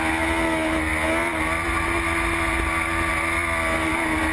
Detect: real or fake real